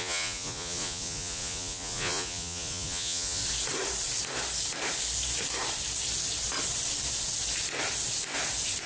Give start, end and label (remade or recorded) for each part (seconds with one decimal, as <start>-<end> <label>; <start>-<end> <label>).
0.0-3.4 remade; 3.4-8.9 recorded